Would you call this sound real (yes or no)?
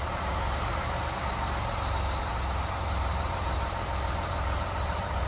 no